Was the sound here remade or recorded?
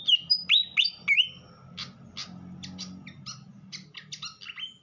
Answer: recorded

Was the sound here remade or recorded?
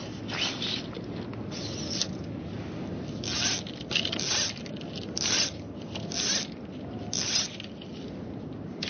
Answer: recorded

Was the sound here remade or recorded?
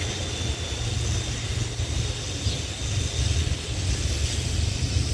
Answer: recorded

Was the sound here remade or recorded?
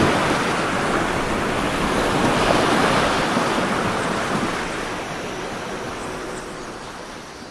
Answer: recorded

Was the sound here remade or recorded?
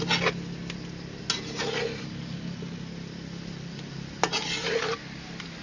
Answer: recorded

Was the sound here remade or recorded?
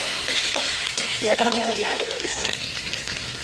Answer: remade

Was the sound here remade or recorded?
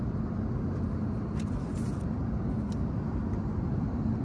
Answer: recorded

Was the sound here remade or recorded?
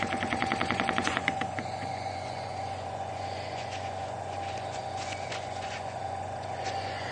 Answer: remade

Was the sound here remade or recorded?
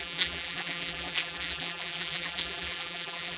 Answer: remade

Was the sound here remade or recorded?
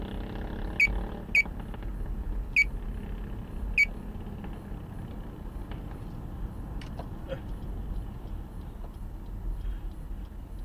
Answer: recorded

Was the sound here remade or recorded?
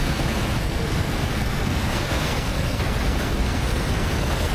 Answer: remade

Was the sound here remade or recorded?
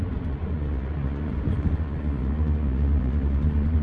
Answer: remade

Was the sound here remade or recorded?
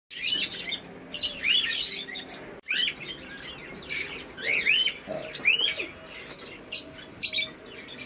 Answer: recorded